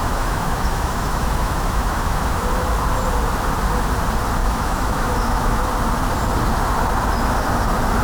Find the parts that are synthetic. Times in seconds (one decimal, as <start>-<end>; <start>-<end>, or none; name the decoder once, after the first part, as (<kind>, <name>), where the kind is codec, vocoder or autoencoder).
0.0-2.4 (autoencoder, DAC-VAE); 4.4-5.7